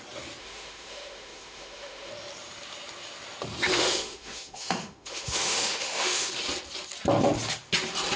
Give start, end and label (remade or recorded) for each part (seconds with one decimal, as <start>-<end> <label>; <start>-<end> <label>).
0.0-0.4 recorded; 0.4-2.1 remade; 2.1-3.7 recorded; 3.7-6.3 remade; 6.3-8.2 recorded